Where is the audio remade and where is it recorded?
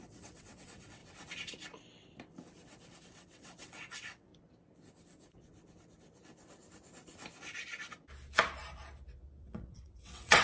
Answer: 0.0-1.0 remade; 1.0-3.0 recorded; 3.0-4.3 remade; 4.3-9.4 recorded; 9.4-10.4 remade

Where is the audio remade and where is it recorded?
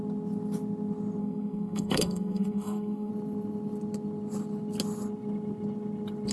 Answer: 0.0-1.2 recorded; 1.2-3.1 remade; 3.1-6.3 recorded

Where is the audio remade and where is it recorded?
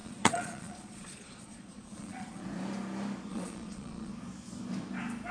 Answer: 0.0-2.4 remade; 2.4-3.3 recorded; 3.3-4.1 remade; 4.1-5.3 recorded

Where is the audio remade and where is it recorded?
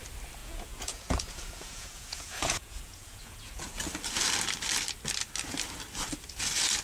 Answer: 0.0-0.4 recorded; 0.4-3.8 remade; 3.8-6.8 recorded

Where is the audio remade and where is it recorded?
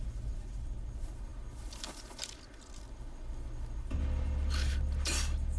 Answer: 0.0-5.6 recorded